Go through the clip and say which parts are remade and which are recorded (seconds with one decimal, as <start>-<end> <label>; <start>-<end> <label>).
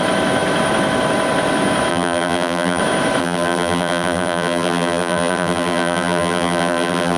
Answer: 0.0-1.9 recorded; 1.9-2.8 remade; 2.8-3.2 recorded; 3.2-7.2 remade